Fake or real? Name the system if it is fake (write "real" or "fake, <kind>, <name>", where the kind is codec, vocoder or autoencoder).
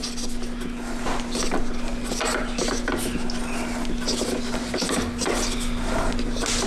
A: real